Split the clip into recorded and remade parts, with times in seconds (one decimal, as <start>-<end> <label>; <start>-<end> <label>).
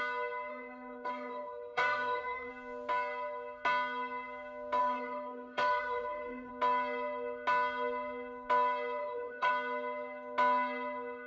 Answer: 0.0-0.5 recorded; 0.5-2.5 remade; 2.5-4.8 recorded; 4.8-6.5 remade; 6.5-9.0 recorded; 9.0-9.5 remade; 9.5-11.3 recorded